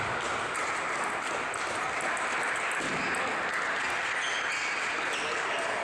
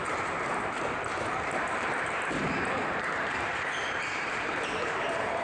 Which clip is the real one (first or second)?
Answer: first